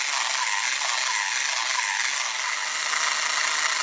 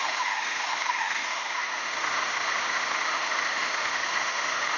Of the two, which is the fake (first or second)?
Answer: second